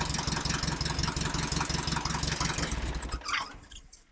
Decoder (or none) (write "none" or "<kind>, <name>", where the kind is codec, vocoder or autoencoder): none